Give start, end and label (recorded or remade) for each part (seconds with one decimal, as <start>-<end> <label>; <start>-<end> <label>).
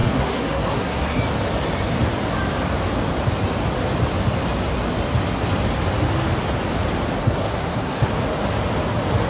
0.0-1.2 remade; 1.2-7.2 recorded; 7.2-8.1 remade; 8.1-9.3 recorded